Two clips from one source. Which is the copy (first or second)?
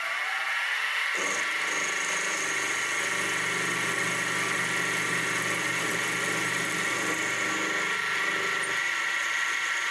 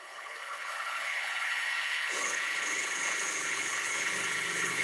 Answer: second